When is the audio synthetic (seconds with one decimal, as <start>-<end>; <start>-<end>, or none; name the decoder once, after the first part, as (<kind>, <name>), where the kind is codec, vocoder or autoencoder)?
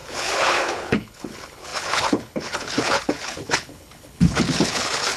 0.0-5.2 (codec, HILCodec)